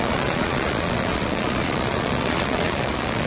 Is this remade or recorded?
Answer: remade